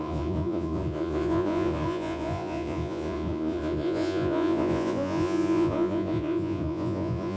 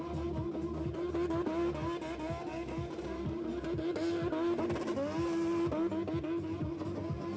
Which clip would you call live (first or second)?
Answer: second